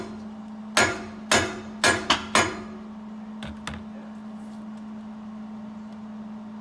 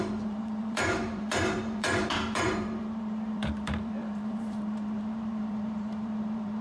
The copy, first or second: second